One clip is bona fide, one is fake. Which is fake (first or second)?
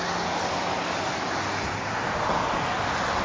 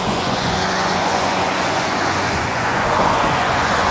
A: second